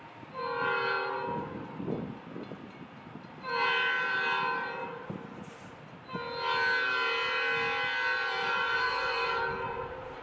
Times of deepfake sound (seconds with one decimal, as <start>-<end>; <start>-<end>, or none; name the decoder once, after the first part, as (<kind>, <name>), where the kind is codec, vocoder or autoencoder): 8.4-9.4 (vocoder, Vocos)